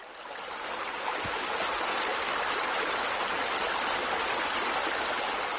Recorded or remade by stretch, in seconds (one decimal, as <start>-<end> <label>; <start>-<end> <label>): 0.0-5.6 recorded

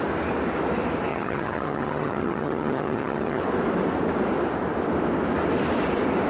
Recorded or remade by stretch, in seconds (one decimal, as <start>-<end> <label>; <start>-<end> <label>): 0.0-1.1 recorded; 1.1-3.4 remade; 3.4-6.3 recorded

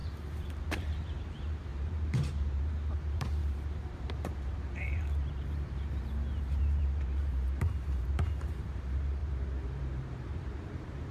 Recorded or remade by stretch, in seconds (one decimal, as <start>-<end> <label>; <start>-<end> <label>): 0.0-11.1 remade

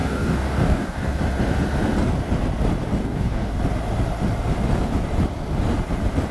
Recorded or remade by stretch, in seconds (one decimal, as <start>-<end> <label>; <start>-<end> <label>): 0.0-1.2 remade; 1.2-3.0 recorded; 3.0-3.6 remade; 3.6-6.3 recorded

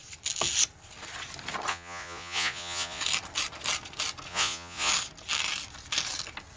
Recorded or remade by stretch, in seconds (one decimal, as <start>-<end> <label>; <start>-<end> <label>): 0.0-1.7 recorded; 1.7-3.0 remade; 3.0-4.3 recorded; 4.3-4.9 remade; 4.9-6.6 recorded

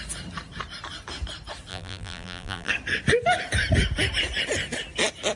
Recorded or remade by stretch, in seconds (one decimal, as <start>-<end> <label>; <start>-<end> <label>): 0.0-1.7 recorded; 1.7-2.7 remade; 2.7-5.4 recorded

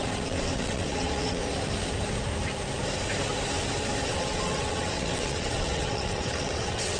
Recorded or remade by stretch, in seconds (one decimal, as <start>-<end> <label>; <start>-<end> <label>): 0.0-1.4 remade; 1.4-4.1 recorded; 4.1-7.0 remade

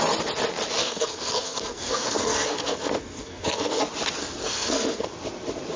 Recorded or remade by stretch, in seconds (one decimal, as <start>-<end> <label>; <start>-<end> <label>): 0.0-0.8 recorded; 0.8-3.8 remade; 3.8-4.2 recorded; 4.2-5.1 remade; 5.1-5.8 recorded